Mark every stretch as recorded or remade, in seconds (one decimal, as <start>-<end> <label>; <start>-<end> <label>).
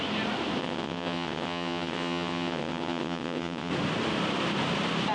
0.0-0.6 recorded; 0.6-3.7 remade; 3.7-5.1 recorded